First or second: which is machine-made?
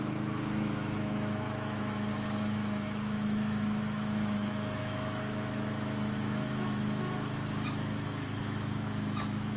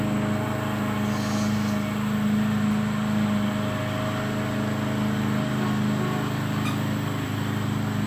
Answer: first